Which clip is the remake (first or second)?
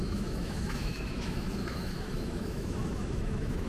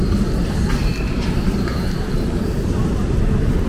first